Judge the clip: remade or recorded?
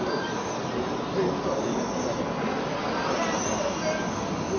recorded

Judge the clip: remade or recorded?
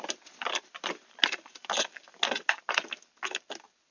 recorded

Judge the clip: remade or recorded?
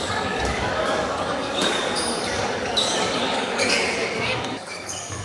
remade